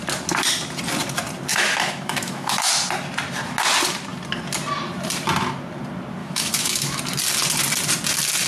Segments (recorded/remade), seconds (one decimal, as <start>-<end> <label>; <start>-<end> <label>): 0.0-1.5 recorded; 1.5-2.7 remade; 2.7-6.2 recorded; 6.2-7.0 remade; 7.0-8.5 recorded